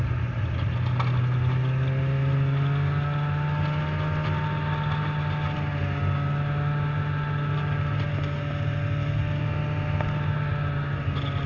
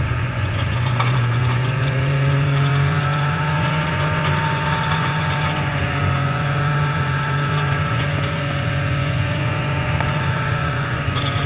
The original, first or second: first